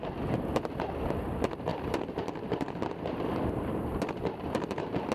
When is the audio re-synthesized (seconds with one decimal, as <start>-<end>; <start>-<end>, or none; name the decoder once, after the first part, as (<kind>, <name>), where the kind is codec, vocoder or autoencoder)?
1.7-5.1 (vocoder, BigVGAN v2)